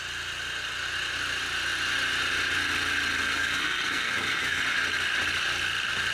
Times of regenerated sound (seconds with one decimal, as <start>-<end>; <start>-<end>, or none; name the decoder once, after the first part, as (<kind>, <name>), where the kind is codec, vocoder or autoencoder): 3.2-4.6 (codec, SNAC)